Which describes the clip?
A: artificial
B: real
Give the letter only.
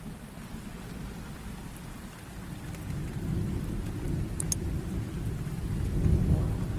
B